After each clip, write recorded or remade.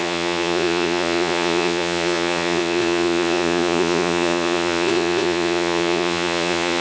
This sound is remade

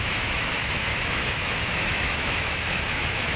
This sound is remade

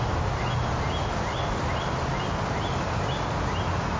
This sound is recorded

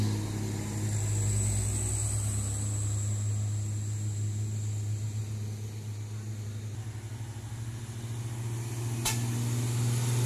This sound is recorded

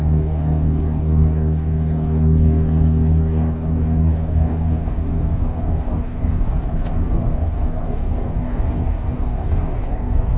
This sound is remade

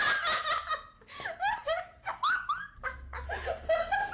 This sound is recorded